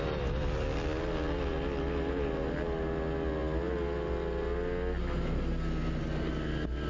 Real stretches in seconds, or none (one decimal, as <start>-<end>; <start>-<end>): 0.0-6.9